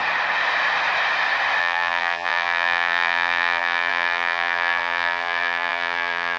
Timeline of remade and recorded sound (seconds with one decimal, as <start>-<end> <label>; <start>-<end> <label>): 0.0-1.6 recorded; 1.6-6.4 remade